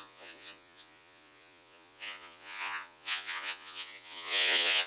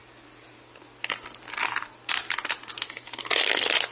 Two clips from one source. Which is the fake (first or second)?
first